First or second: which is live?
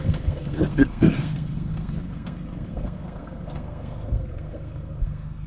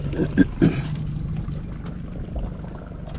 second